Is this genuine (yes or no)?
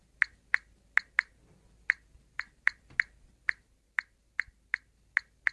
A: yes